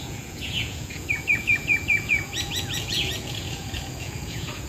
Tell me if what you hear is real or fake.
fake